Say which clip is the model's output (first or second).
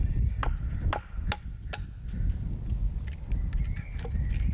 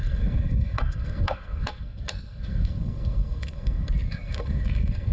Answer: second